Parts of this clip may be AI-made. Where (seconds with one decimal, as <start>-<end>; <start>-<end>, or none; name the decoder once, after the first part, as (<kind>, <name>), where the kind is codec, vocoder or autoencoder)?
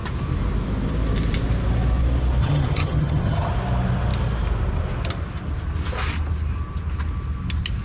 2.4-3.5 (vocoder, HiFi-GAN)